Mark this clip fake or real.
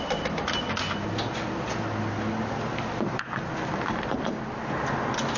real